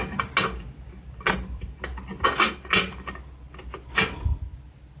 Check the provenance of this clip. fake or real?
real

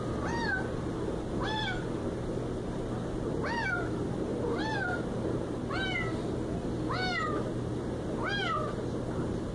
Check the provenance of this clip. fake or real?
real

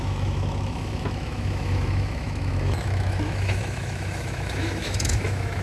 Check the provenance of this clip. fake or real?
fake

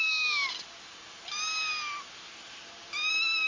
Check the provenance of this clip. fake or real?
real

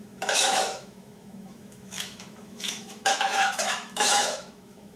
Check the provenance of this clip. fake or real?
fake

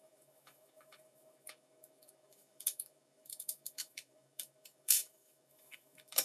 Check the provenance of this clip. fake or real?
fake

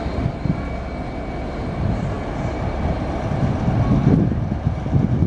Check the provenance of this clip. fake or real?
real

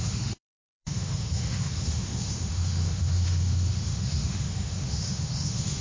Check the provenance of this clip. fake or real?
fake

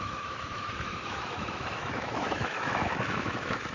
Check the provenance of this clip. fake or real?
fake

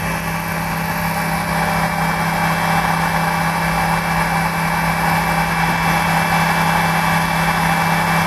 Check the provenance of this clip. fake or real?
real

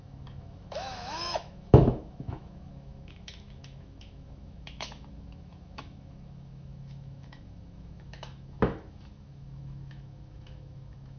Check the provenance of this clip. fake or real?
fake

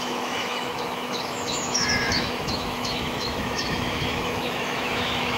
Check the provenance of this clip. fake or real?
fake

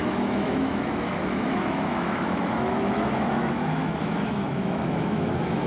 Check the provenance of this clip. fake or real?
fake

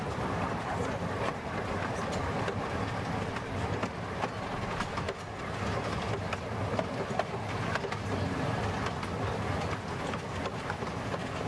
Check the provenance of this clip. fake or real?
real